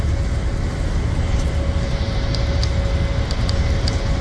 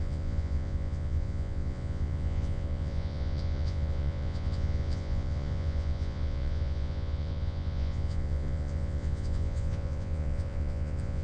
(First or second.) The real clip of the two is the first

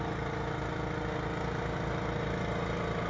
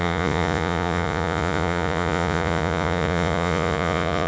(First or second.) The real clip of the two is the first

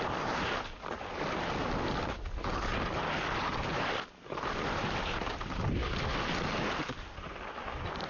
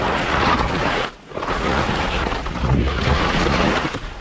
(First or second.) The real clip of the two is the first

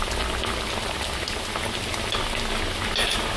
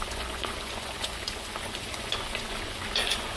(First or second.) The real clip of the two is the first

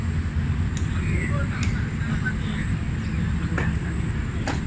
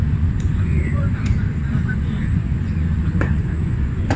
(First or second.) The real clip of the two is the first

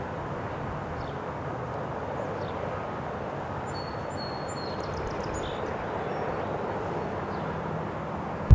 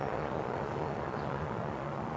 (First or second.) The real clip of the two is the first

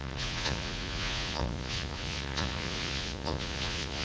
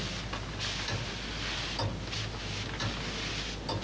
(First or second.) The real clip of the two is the second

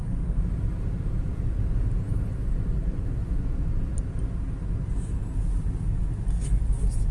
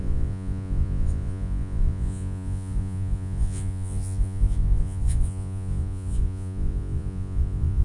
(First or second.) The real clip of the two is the first